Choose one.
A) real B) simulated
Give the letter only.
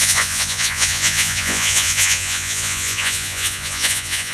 B